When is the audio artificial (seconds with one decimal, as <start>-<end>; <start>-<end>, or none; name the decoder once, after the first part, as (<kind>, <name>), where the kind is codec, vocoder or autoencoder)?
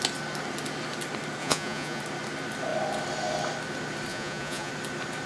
1.4-2.0 (vocoder, Vocos); 4.1-4.7